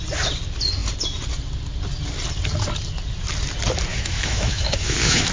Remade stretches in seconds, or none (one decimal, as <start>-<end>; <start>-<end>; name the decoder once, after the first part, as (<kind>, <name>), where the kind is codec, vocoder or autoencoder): 3.9-5.3 (autoencoder, DAC-VAE)